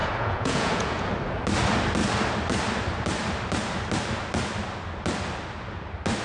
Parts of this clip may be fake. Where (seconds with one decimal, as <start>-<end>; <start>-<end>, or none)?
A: 0.0-1.1